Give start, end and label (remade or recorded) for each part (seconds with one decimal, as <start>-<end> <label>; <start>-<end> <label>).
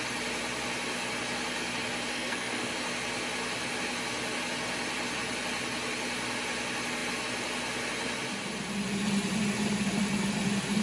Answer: 0.0-2.1 recorded; 2.1-2.7 remade; 2.7-10.8 recorded